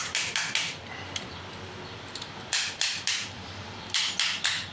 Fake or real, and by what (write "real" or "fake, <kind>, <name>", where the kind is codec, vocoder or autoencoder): fake, vocoder, BigVGAN v2